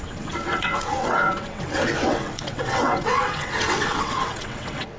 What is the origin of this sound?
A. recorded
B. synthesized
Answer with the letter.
B